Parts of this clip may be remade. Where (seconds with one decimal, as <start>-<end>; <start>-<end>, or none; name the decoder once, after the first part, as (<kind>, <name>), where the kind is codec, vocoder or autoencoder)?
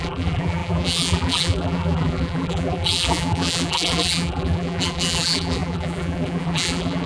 0.0-7.1 (vocoder, BigVGAN v2)